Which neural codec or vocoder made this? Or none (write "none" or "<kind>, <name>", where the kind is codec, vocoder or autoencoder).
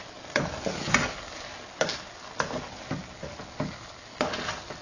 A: none